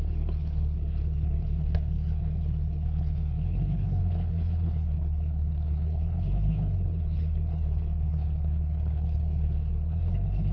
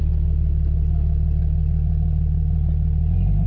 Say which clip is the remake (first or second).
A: first